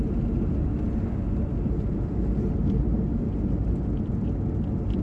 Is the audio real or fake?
real